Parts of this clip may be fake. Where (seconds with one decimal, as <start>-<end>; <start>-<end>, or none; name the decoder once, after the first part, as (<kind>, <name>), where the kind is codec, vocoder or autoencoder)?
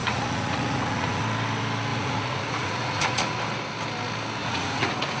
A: 0.0-1.2 (vocoder, Vocos); 1.9-3.4; 4.4-5.2